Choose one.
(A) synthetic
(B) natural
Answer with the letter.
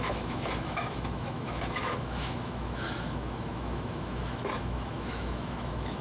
A